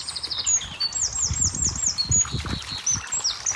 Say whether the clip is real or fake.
real